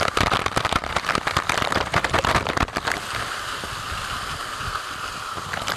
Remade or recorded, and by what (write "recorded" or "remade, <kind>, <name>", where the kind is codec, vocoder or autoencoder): remade, vocoder, BigVGAN v2